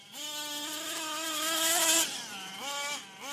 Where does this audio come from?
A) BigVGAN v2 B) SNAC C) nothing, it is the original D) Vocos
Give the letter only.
C